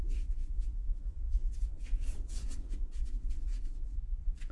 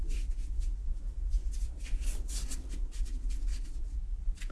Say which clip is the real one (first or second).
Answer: second